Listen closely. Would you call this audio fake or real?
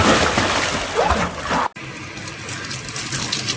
real